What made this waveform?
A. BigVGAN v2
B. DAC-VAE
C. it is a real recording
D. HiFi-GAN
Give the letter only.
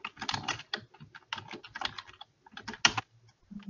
C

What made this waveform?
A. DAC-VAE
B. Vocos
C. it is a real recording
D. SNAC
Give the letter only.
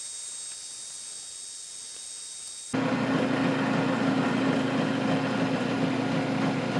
C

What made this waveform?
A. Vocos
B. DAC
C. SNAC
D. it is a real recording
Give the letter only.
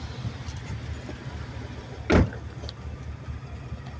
D